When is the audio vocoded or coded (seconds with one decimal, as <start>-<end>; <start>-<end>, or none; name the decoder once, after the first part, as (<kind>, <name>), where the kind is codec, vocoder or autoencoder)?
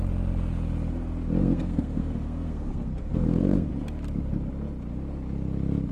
1.4-3.7 (codec, SNAC)